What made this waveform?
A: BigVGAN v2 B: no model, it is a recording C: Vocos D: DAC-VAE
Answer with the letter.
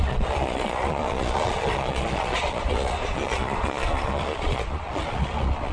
C